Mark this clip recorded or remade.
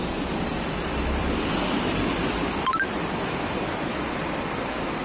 remade